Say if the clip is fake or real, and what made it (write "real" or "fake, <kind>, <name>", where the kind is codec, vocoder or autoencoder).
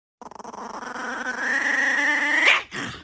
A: real